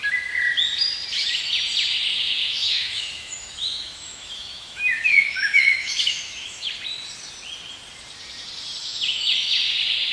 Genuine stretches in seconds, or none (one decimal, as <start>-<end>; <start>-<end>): 0.0-2.1; 6.7-8.8; 9.7-10.1